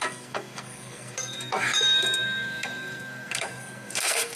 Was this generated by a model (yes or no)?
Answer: yes